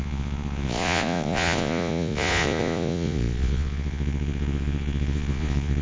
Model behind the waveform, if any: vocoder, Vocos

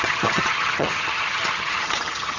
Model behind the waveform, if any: vocoder, HiFi-GAN